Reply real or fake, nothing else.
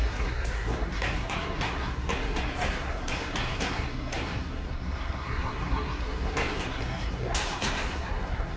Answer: fake